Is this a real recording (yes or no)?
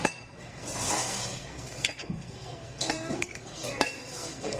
no